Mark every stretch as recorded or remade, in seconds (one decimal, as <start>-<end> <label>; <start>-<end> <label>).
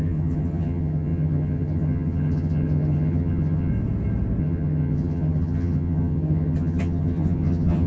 0.0-3.7 remade; 3.7-4.4 recorded; 4.4-7.9 remade